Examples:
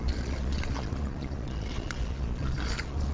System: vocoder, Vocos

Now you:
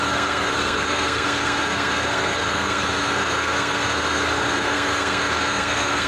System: codec, SNAC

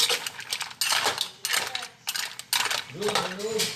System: none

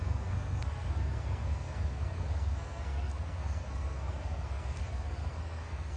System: codec, SNAC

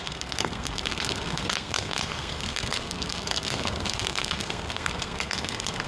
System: codec, SNAC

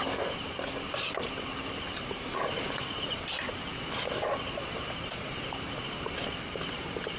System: none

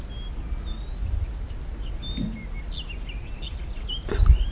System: none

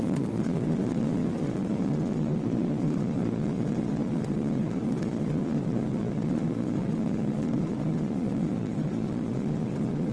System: vocoder, Vocos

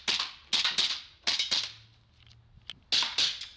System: none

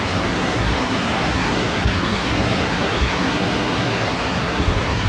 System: codec, SNAC